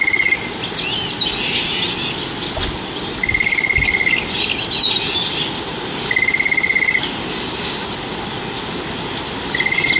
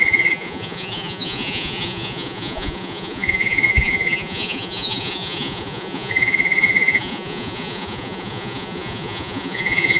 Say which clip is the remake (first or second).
second